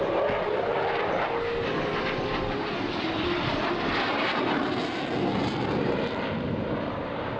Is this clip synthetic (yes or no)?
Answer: no